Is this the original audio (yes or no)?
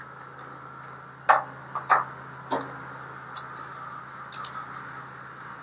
yes